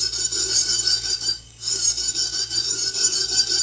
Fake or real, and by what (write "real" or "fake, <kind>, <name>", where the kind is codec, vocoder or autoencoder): fake, codec, DAC